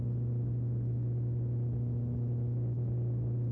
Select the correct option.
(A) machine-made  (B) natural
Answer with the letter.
B